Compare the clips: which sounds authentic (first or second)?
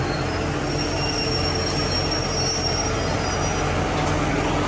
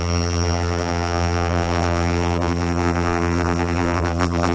first